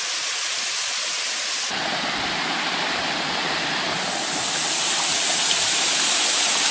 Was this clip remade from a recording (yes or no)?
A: no